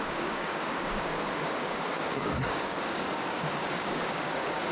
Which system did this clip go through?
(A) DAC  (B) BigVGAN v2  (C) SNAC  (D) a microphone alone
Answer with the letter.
A